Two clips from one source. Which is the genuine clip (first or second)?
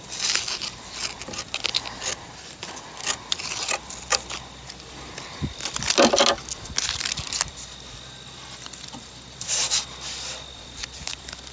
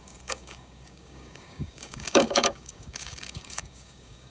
first